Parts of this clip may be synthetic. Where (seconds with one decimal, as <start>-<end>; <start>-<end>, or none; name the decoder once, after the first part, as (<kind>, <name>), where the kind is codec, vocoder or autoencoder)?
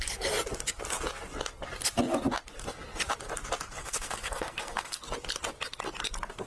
3.8-5.0 (codec, SNAC)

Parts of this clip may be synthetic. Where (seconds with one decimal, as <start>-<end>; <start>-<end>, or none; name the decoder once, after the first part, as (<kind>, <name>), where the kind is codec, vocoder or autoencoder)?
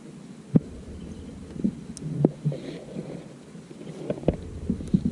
none